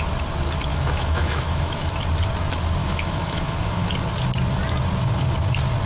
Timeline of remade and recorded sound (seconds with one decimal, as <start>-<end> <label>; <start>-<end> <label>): 0.0-0.7 recorded; 0.7-1.9 remade; 1.9-2.8 recorded; 2.8-3.9 remade; 3.9-5.9 recorded